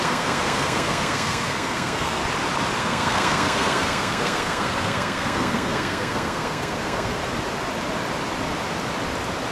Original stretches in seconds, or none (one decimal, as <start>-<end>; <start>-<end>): 2.2-2.8; 7.2-9.5